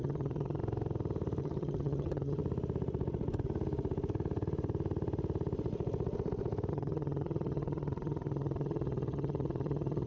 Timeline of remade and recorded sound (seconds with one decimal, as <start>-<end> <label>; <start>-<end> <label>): 0.0-0.6 remade; 0.6-1.4 recorded; 1.4-2.4 remade; 2.4-6.7 recorded; 6.7-10.1 remade